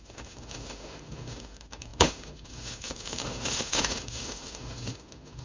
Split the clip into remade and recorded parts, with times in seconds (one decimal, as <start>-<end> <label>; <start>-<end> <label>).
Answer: 0.0-5.4 remade